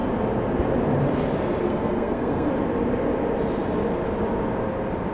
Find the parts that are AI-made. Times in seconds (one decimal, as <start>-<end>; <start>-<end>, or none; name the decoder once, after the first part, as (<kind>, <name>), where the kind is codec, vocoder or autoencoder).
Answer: 1.7-2.5 (codec, SNAC)